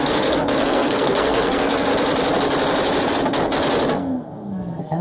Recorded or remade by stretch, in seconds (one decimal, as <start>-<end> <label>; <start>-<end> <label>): 0.0-1.9 remade; 1.9-3.9 recorded; 3.9-5.0 remade